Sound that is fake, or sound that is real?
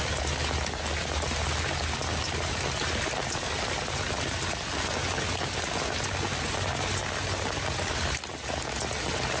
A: real